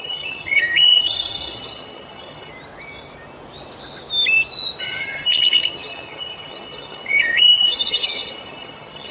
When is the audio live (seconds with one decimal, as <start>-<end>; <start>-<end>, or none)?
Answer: 2.5-4.8